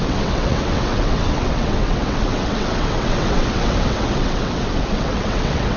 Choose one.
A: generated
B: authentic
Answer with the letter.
A